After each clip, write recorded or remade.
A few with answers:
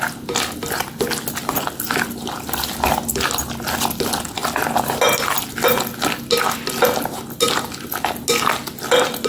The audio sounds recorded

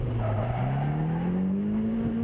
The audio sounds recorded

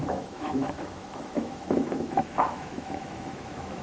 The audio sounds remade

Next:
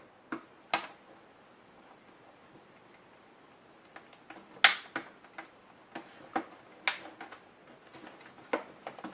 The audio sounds recorded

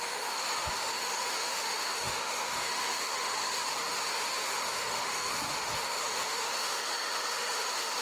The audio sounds remade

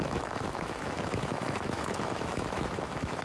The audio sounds remade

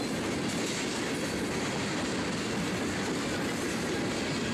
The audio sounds recorded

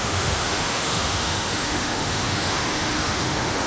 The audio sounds remade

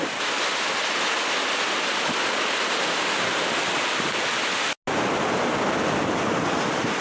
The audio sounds recorded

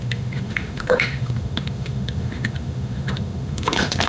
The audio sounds remade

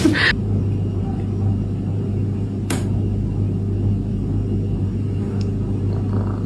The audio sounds recorded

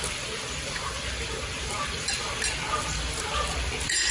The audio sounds recorded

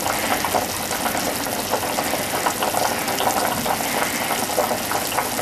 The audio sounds recorded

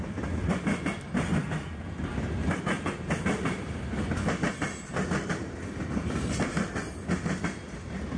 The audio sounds recorded